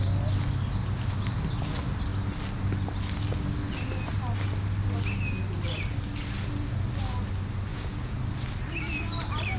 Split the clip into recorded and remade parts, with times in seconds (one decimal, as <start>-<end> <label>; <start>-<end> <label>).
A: 0.0-7.7 recorded; 7.7-8.2 remade; 8.2-9.6 recorded